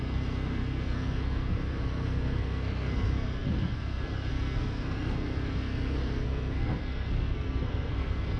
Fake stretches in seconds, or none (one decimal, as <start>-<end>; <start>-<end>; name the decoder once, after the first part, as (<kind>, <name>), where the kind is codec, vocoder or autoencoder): 0.0-8.4 (codec, SNAC)